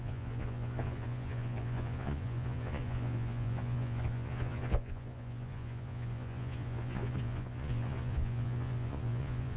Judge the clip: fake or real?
fake